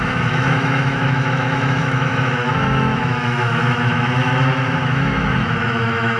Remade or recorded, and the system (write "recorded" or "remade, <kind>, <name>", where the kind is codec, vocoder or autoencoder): remade, autoencoder, DAC-VAE